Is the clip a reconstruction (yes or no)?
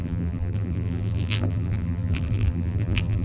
yes